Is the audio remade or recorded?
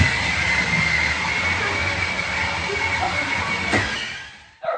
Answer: recorded